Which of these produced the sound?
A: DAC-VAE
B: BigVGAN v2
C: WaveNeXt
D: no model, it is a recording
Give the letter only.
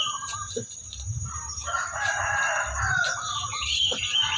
B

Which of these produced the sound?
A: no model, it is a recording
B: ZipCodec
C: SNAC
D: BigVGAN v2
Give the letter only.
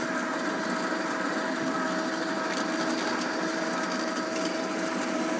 A